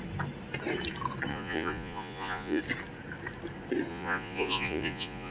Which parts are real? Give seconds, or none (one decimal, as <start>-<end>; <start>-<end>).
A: 0.0-1.3; 2.6-3.9